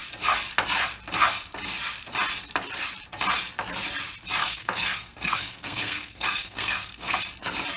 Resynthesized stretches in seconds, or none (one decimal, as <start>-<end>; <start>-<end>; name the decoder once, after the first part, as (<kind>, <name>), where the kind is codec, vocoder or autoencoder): 4.4-7.2 (codec, SNAC)